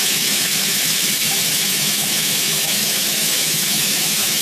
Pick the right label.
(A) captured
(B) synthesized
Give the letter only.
B